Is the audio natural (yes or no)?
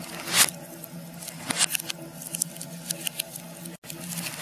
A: yes